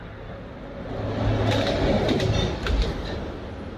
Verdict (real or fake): real